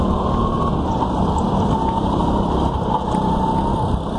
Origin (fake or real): real